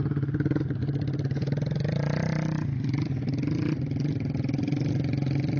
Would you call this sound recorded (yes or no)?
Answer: yes